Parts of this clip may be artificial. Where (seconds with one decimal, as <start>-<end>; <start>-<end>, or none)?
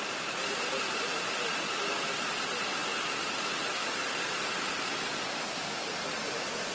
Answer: none